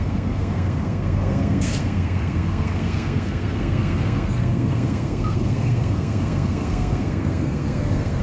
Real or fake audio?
fake